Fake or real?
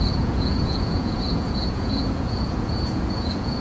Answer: fake